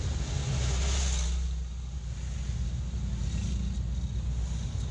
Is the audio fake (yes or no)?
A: no